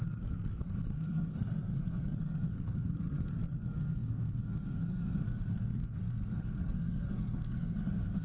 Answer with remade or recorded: remade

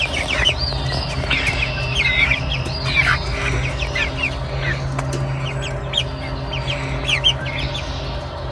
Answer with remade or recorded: recorded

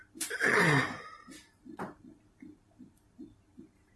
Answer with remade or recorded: remade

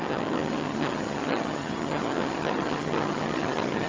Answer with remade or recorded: remade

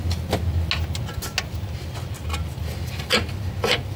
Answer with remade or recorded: recorded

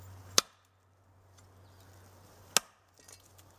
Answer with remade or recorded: recorded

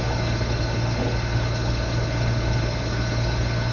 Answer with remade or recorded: remade